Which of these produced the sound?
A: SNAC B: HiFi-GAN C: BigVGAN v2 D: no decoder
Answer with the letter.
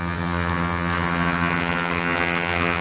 B